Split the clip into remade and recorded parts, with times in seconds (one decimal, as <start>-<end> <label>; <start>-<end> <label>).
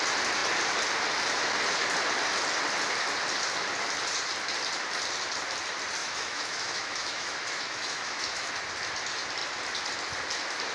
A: 0.0-6.0 recorded; 6.0-8.5 remade; 8.5-10.7 recorded